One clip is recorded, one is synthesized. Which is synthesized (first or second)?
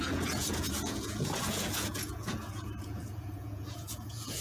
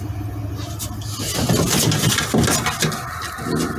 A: first